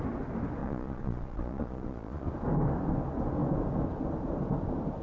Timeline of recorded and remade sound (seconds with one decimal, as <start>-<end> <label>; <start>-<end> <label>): 0.0-0.6 recorded; 0.6-2.3 remade; 2.3-5.0 recorded